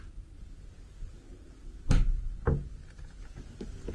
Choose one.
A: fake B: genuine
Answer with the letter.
B